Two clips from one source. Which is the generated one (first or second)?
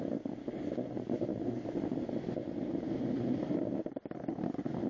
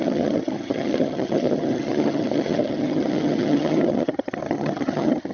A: second